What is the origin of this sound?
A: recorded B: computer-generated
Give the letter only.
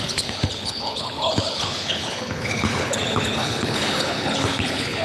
B